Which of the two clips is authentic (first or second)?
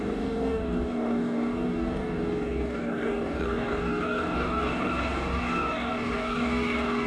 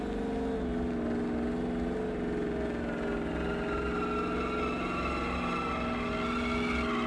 second